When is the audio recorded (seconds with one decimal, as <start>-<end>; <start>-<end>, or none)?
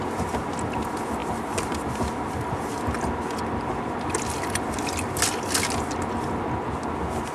0.0-7.3